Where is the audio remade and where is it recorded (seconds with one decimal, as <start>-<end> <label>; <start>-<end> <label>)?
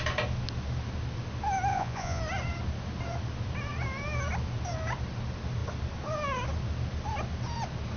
0.0-1.7 recorded; 1.7-2.2 remade; 2.2-8.0 recorded